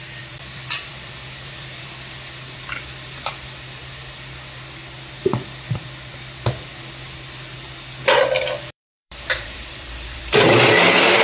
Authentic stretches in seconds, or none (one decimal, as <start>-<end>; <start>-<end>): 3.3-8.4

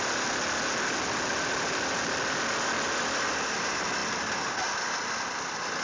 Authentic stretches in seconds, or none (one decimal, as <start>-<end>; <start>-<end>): 0.0-5.8

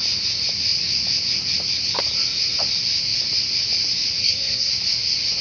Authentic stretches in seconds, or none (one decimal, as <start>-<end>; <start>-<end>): 0.0-4.2; 4.7-5.4

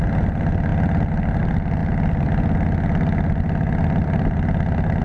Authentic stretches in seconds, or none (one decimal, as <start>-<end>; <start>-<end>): 0.0-5.0

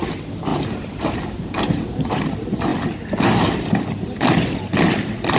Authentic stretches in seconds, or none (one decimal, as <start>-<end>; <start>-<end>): 0.0-0.5; 2.2-5.4

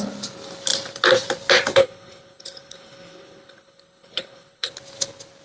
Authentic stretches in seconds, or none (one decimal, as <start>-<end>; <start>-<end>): 0.0-1.8; 4.7-5.4